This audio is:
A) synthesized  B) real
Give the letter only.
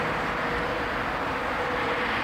B